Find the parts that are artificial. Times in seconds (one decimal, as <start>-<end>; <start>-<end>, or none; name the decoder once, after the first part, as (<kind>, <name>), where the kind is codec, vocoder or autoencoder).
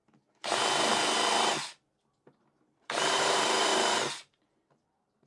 3.2-5.3 (vocoder, BigVGAN v2)